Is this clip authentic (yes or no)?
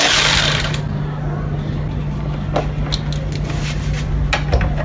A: yes